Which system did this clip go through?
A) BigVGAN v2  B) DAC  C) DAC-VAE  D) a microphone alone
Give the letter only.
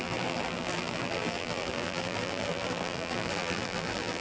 A